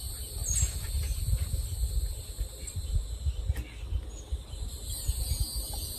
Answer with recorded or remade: recorded